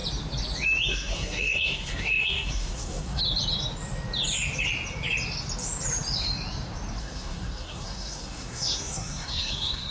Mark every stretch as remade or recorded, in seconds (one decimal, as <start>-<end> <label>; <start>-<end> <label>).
0.0-0.9 recorded; 0.9-3.2 remade; 3.2-7.0 recorded; 7.0-9.9 remade